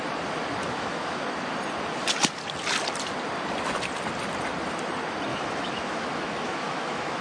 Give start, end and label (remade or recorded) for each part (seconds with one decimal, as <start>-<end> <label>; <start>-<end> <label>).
0.0-0.6 recorded; 0.6-1.2 remade; 1.2-5.3 recorded; 5.3-7.2 remade